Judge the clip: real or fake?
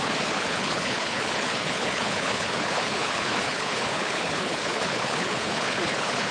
fake